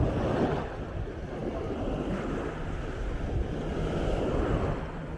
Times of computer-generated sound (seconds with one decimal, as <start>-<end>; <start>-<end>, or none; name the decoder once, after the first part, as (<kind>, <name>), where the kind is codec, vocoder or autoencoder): none